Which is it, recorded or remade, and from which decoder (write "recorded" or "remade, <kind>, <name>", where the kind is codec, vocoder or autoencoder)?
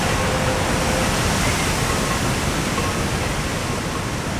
recorded